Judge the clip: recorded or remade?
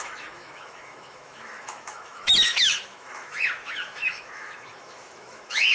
remade